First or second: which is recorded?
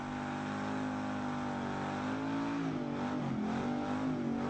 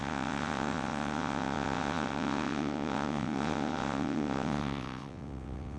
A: first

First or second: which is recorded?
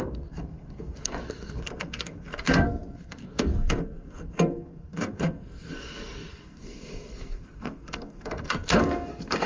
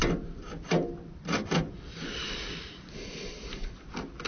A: second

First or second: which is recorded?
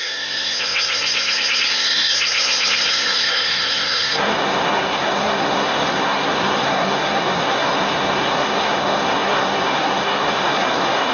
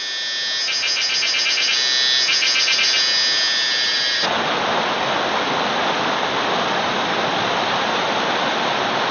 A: second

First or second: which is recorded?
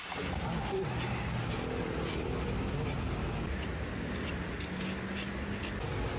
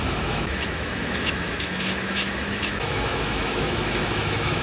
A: first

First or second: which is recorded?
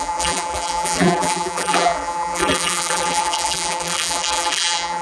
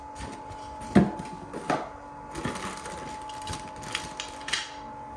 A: second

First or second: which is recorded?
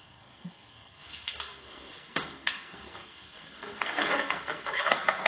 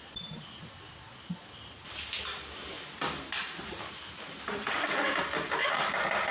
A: second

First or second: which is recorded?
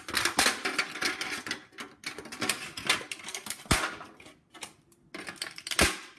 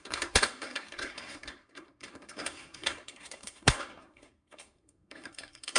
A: first